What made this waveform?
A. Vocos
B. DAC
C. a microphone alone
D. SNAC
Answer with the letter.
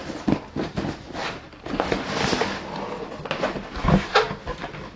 C